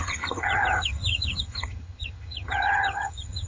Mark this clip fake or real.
fake